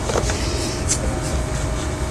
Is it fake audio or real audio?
real